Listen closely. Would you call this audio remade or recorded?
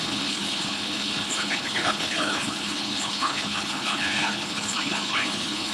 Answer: remade